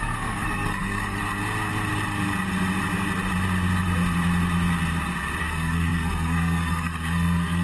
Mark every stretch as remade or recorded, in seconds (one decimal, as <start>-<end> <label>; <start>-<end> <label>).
0.0-1.2 remade; 1.2-5.4 recorded; 5.4-7.6 remade